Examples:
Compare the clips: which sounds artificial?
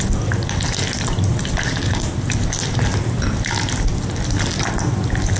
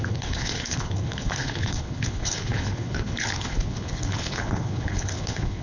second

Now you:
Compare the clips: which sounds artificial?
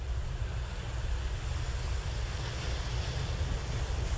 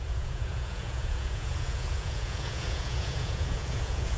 second